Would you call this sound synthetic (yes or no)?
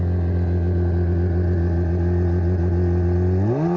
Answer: no